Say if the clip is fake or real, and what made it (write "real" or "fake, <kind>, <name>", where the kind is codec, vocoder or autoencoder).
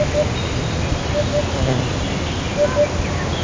real